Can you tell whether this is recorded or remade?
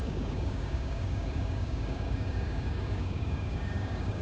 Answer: remade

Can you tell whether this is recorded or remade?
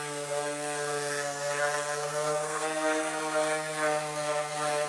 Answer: remade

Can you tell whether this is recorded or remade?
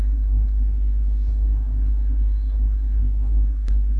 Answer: remade